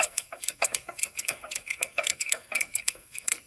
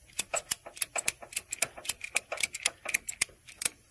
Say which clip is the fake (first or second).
first